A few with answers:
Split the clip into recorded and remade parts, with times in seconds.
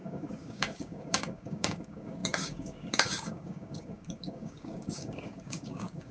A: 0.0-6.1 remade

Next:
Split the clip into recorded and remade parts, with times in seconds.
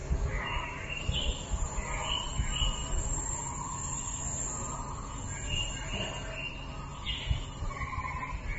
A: 0.0-1.0 remade; 1.0-8.6 recorded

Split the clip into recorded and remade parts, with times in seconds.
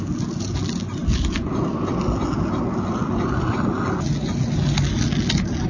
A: 0.0-5.7 recorded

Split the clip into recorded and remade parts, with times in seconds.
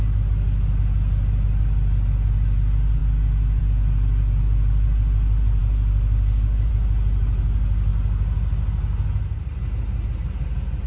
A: 0.0-5.6 recorded; 5.6-6.7 remade; 6.7-10.9 recorded